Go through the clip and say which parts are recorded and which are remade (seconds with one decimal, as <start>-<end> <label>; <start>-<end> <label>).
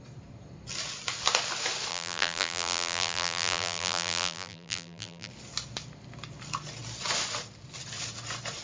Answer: 0.0-1.9 recorded; 1.9-5.3 remade; 5.3-8.6 recorded